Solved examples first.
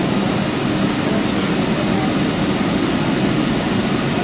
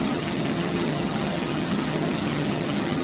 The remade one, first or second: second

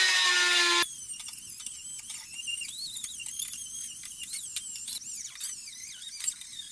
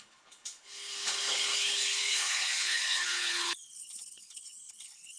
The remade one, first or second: second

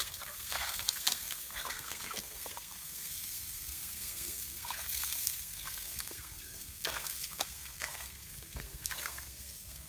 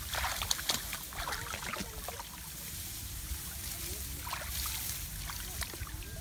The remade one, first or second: first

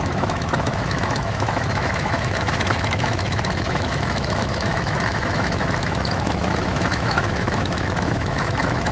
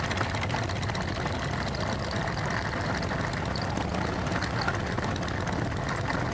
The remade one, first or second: first